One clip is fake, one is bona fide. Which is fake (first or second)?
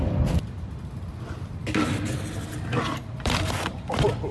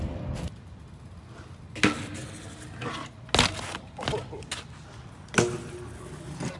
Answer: first